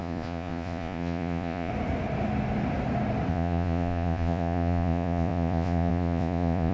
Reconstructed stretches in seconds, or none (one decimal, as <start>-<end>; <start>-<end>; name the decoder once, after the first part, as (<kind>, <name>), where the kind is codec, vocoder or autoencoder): 0.0-1.7 (vocoder, Vocos); 3.3-6.7